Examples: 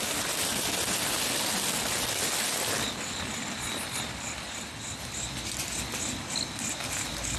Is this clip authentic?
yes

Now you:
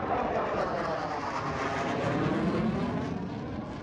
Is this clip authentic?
yes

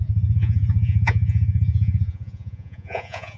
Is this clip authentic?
no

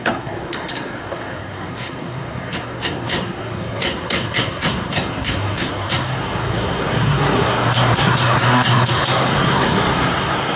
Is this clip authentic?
no